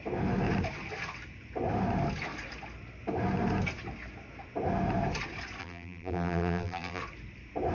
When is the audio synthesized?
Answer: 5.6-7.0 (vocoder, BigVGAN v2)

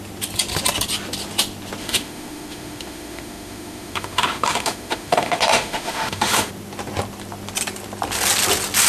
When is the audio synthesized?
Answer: 1.8-6.5 (autoencoder, DAC-VAE)

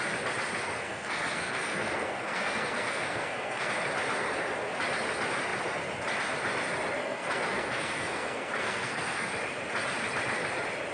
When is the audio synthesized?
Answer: 0.6-3.7 (codec, SNAC); 7.0-9.3